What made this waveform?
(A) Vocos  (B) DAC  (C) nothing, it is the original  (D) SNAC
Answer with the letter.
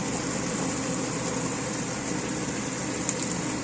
C